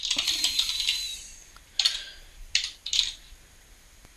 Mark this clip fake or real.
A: real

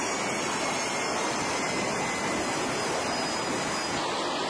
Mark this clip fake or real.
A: real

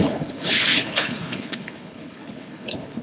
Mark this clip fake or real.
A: fake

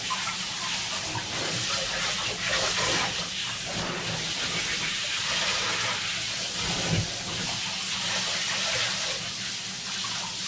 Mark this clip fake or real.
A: real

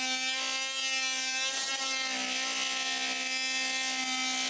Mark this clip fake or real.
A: real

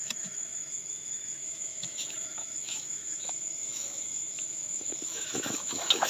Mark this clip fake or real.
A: fake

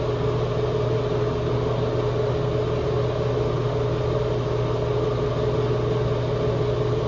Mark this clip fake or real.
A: real